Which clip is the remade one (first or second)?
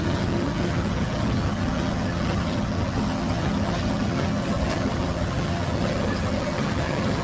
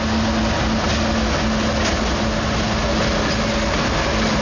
first